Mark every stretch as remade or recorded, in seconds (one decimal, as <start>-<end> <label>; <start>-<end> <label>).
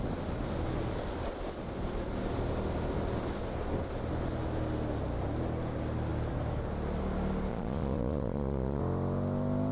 0.0-7.5 recorded; 7.5-8.8 remade; 8.8-9.7 recorded